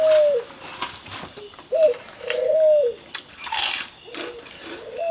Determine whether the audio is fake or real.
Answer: real